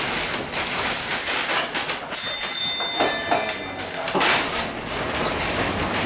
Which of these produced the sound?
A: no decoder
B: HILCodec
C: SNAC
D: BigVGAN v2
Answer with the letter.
A